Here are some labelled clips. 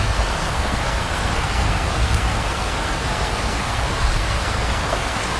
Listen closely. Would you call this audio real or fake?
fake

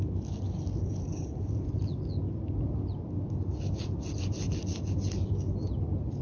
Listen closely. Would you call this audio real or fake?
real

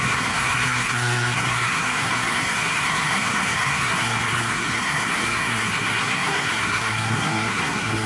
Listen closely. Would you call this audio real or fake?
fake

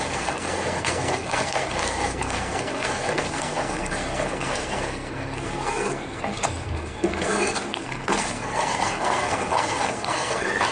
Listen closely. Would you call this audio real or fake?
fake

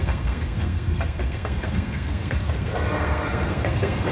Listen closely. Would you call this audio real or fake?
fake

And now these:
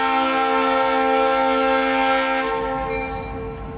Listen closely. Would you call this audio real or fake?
real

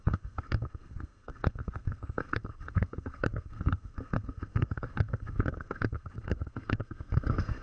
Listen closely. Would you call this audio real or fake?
fake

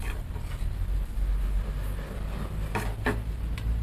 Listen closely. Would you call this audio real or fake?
real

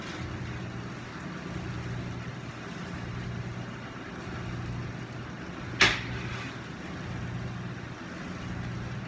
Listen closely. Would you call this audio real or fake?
real